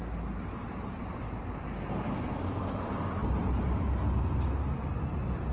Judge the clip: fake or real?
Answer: real